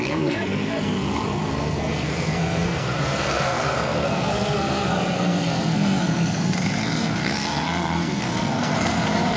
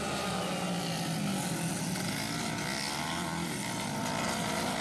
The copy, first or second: first